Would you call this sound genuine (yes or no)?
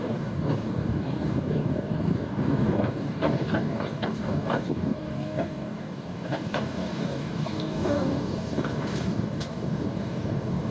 no